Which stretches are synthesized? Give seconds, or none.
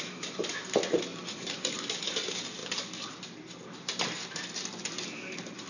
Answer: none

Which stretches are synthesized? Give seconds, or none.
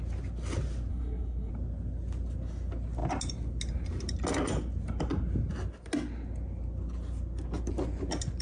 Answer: 0.9-1.5 (codec, SNAC)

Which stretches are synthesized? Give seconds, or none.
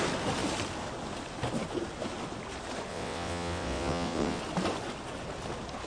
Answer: 2.9-4.4 (vocoder, WaveNeXt)